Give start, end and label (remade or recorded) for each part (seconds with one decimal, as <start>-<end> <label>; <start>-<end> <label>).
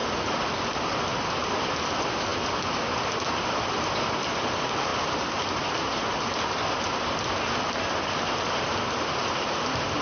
0.0-10.0 recorded